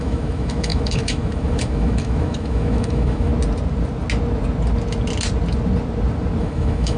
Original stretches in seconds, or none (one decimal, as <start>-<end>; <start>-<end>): 3.3-6.4